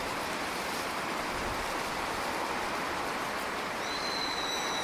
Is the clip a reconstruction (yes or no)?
no